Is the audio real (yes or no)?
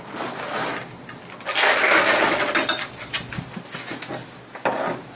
yes